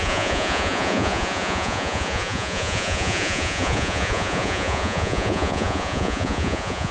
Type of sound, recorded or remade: remade